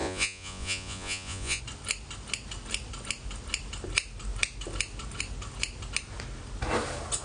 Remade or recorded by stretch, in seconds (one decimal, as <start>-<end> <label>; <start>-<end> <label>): 0.0-1.6 remade; 1.6-7.2 recorded